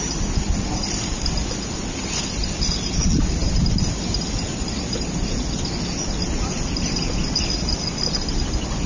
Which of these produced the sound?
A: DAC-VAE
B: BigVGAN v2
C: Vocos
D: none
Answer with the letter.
D